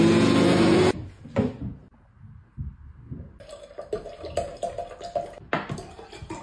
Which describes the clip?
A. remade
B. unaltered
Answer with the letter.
B